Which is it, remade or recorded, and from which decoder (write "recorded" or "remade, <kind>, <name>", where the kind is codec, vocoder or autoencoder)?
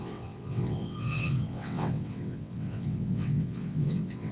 remade, vocoder, WaveNeXt